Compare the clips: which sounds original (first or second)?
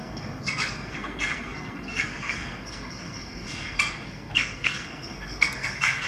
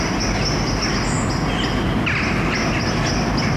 second